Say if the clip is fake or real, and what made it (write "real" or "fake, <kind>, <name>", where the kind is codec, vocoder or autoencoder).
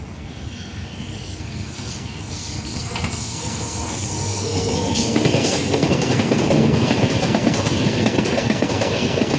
fake, codec, SNAC